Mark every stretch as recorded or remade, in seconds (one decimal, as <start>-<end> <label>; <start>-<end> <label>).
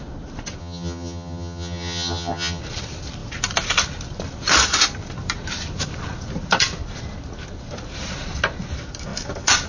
0.0-0.6 recorded; 0.6-2.6 remade; 2.6-9.7 recorded